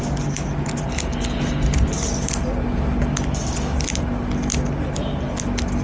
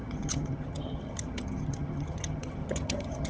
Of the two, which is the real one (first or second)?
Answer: first